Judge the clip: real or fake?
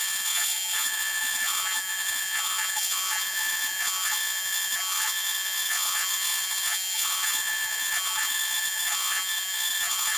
fake